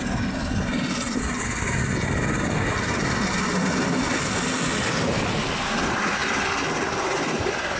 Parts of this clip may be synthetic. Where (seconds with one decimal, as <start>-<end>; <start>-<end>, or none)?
none